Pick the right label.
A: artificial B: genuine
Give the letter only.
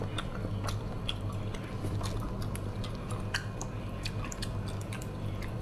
B